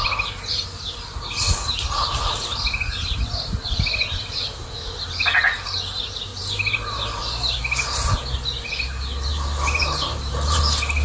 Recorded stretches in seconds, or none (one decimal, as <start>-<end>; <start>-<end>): 0.6-6.3; 7.6-9.3; 10.6-11.0